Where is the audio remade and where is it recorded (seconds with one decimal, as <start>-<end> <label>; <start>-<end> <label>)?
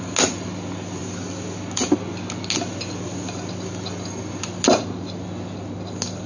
0.0-6.3 recorded